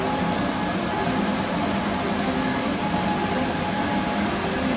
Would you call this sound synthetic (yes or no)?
no